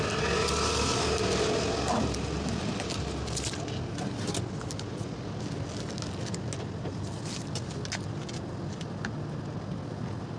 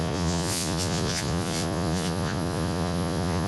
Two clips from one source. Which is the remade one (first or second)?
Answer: second